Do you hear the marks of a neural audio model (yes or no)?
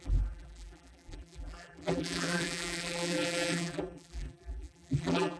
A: yes